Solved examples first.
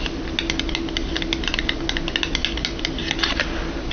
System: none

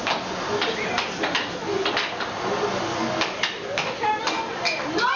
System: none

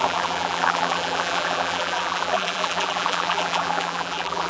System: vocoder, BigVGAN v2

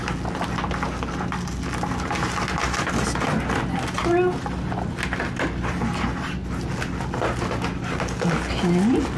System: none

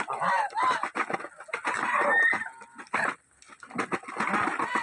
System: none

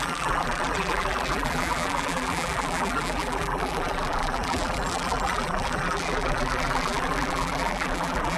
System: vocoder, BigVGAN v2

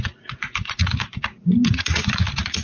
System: vocoder, Vocos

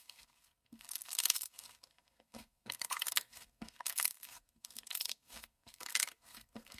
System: codec, SNAC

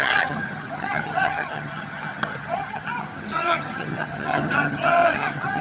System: vocoder, HiFi-GAN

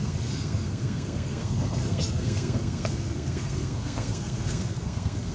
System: codec, SNAC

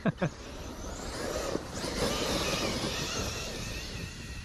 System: vocoder, BigVGAN v2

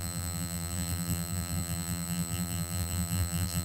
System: vocoder, BigVGAN v2